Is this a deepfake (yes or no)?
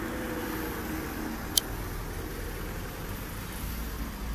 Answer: no